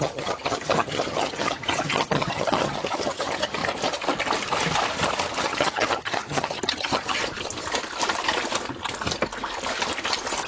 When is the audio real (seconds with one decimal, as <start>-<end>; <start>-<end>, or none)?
3.6-5.4; 7.2-10.5